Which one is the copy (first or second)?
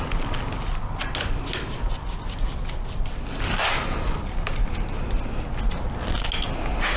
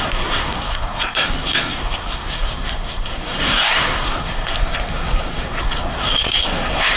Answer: second